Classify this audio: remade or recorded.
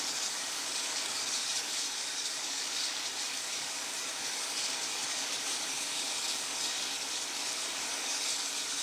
remade